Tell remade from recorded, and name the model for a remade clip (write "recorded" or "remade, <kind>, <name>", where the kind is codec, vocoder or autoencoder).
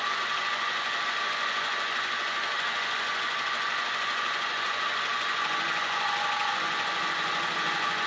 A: remade, vocoder, Vocos